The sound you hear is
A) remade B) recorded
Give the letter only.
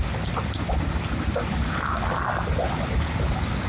B